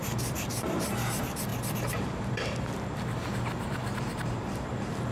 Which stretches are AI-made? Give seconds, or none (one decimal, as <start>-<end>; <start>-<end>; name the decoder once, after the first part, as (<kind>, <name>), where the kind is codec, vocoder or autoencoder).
0.0-5.1 (vocoder, BigVGAN v2)